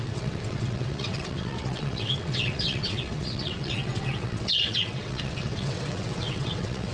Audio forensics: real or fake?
fake